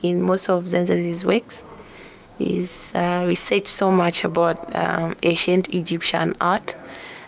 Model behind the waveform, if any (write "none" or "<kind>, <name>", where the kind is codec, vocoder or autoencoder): codec, DAC